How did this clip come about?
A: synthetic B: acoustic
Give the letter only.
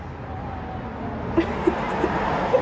B